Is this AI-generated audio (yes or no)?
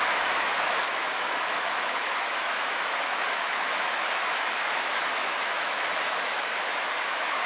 yes